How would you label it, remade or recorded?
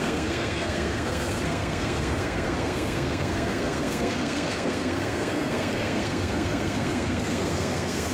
remade